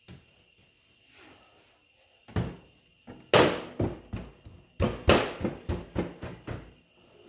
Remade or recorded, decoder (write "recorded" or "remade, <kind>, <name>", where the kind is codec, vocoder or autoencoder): recorded